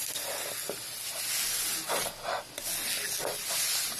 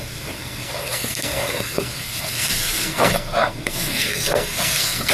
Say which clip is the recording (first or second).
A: first